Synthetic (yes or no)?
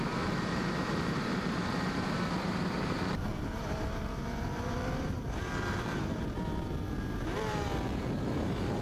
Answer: yes